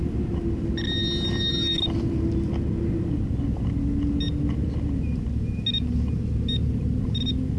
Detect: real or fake real